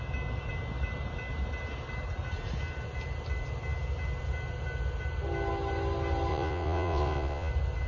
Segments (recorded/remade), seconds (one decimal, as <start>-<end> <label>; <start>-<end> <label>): 0.0-6.3 recorded; 6.3-7.5 remade; 7.5-7.9 recorded

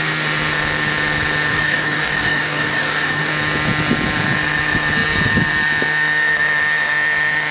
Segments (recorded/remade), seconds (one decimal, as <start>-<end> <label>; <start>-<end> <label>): 0.0-1.5 recorded; 1.5-3.3 remade; 3.3-7.5 recorded

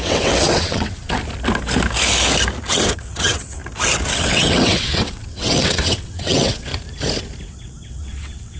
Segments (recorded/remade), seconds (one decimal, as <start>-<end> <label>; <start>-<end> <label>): 0.0-1.2 remade; 1.2-2.7 recorded; 2.7-3.6 remade; 3.6-4.2 recorded; 4.2-6.7 remade; 6.7-7.5 recorded; 7.5-8.6 remade

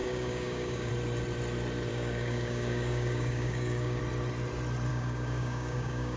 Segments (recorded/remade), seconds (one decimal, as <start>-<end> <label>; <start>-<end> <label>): 0.0-0.9 remade; 0.9-1.9 recorded; 1.9-4.0 remade; 4.0-4.9 recorded; 4.9-6.2 remade